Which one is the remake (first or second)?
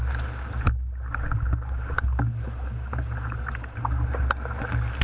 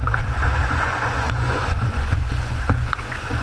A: second